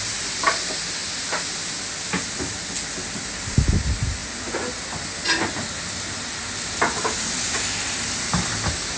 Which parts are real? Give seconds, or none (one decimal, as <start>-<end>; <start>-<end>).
0.0-9.0